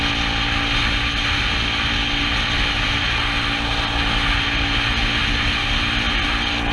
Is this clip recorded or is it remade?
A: recorded